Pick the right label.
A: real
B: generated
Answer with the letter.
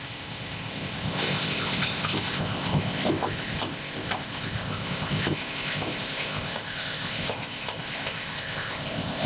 B